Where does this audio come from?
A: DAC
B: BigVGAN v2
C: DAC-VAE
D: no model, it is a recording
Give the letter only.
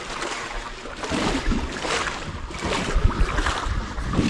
D